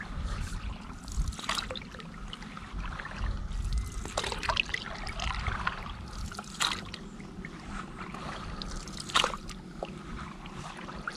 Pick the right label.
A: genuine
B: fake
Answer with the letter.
A